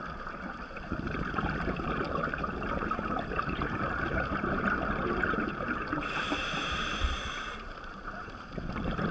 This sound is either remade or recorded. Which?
remade